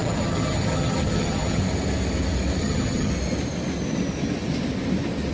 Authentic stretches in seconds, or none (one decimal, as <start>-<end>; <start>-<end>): 1.6-2.6; 3.1-5.3